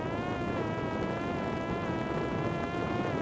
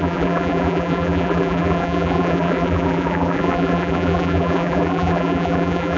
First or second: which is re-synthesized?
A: second